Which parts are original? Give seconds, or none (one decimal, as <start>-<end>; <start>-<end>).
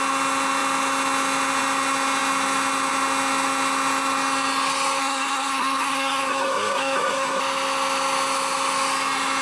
0.0-5.0; 7.4-9.4